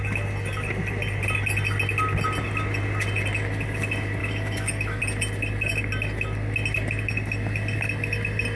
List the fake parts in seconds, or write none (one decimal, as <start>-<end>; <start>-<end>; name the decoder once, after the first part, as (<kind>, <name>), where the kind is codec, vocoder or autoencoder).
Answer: 4.2-5.0 (autoencoder, DAC-VAE)